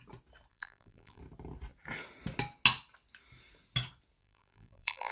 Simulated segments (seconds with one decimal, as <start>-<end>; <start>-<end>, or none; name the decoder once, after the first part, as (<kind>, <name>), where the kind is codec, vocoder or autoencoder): 0.5-1.2 (vocoder, BigVGAN v2); 4.2-5.1